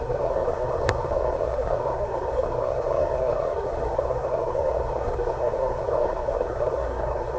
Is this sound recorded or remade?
remade